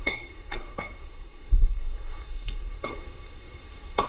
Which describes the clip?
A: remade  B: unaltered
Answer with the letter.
A